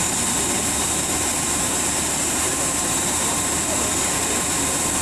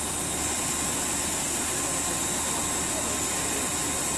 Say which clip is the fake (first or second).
first